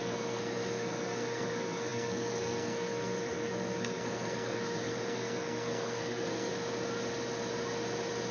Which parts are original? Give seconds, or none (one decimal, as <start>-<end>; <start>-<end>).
6.5-8.3